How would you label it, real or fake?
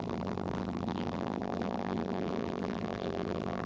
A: fake